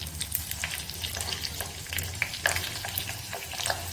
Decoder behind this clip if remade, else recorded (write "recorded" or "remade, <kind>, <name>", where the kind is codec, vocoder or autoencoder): recorded